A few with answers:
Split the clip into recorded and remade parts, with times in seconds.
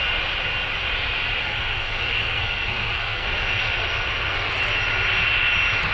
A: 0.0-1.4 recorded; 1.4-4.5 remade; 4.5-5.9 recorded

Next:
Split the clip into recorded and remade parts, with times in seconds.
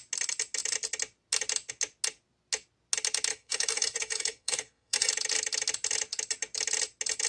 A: 0.0-3.3 recorded; 3.3-5.1 remade; 5.1-7.3 recorded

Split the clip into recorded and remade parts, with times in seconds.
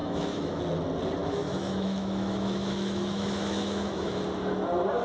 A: 0.0-0.6 remade; 0.6-1.2 recorded; 1.2-4.2 remade; 4.2-5.0 recorded